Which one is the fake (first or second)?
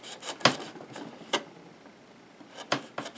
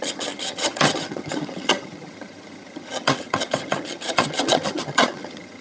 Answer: second